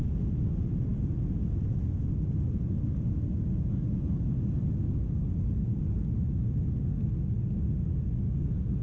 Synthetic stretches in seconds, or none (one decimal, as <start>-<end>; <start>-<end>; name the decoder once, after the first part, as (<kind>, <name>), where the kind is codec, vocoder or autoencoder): none